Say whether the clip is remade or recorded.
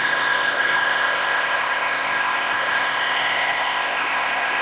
remade